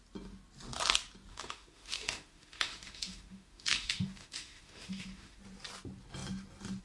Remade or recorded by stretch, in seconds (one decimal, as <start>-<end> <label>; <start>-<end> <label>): 0.0-1.3 recorded; 1.3-5.4 remade; 5.4-6.8 recorded